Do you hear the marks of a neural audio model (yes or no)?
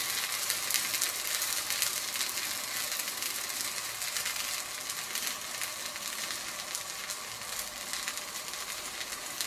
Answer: no